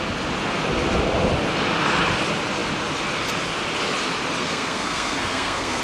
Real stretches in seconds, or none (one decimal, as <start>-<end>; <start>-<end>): 0.0-4.4